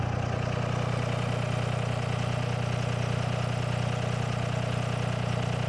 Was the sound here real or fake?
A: real